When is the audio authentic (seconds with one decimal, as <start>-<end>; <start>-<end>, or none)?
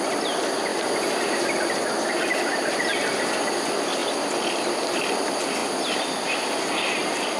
0.0-0.7; 2.8-7.4